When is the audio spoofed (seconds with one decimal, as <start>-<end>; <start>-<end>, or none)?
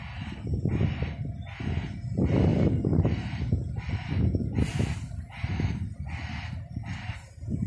none